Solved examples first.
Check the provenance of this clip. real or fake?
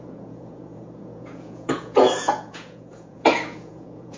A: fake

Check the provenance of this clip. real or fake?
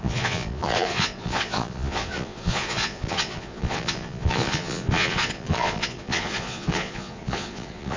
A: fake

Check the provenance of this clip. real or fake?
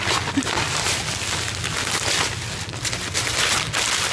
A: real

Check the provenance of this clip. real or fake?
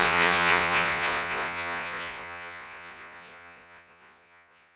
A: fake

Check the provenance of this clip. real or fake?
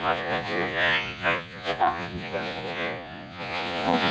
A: fake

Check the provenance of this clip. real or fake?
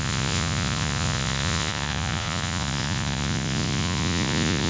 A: fake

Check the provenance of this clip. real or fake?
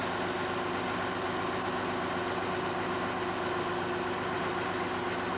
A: real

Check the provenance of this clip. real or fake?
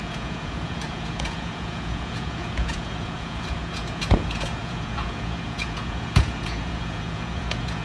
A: fake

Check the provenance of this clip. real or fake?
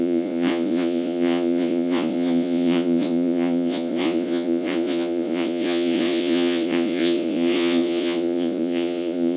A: fake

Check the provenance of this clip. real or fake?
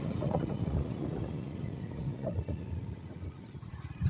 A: fake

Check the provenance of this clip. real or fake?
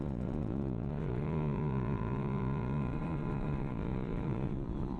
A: fake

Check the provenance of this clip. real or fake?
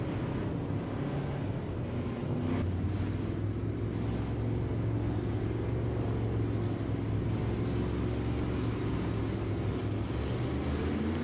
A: real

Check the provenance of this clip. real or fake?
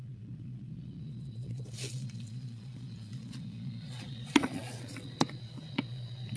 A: fake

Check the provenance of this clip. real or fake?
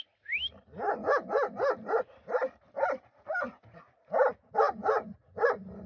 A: real